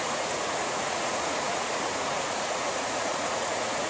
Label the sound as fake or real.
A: fake